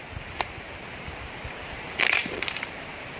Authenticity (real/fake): fake